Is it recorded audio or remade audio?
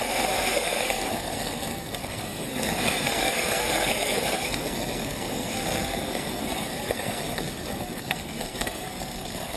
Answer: remade